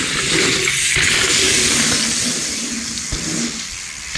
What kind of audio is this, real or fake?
fake